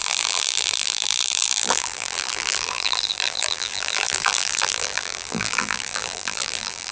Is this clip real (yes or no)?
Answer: no